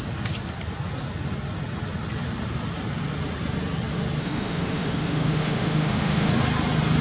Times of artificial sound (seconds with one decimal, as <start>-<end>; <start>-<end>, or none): 4.2-6.3